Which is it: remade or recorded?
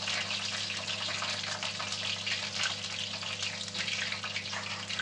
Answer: recorded